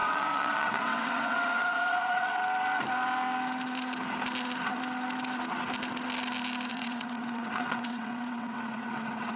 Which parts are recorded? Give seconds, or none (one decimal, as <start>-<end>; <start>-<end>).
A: 2.4-6.7